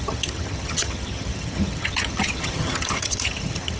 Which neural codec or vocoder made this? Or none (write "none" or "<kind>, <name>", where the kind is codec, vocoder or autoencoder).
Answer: vocoder, HiFi-GAN